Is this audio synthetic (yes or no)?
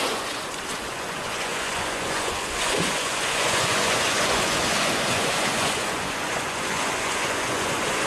yes